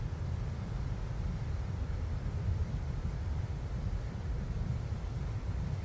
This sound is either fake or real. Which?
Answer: real